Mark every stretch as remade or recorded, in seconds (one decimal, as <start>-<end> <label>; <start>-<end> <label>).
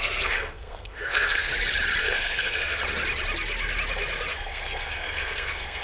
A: 0.0-1.5 remade; 1.5-2.0 recorded; 2.0-2.8 remade; 2.8-4.3 recorded; 4.3-5.8 remade